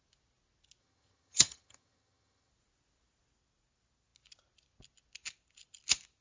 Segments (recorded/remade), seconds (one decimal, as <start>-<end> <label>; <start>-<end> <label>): 0.0-0.8 recorded; 0.8-2.5 remade; 2.5-6.2 recorded